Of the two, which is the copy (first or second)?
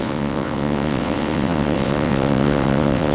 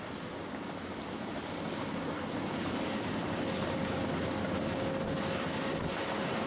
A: first